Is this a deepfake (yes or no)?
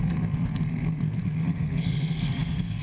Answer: yes